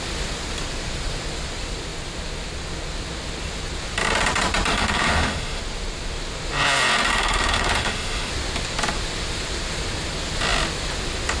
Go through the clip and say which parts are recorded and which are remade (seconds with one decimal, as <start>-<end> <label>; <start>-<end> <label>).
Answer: 0.0-4.7 recorded; 4.7-5.6 remade; 5.6-7.1 recorded; 7.1-8.3 remade; 8.3-11.4 recorded